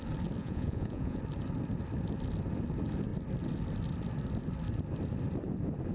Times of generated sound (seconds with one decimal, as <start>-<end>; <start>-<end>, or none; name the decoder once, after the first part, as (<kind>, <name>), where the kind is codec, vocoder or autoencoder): 0.4-1.2 (vocoder, Vocos)